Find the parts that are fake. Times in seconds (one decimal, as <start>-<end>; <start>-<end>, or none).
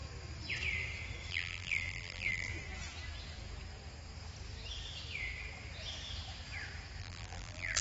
1.3-2.5; 7.0-7.8